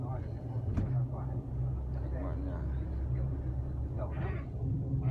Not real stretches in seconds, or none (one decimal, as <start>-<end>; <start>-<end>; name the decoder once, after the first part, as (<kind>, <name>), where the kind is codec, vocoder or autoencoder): 0.0-0.7 (vocoder, BigVGAN v2); 3.8-5.1